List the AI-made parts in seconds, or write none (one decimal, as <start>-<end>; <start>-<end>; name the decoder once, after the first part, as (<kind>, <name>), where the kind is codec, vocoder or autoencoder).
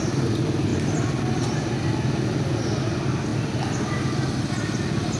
none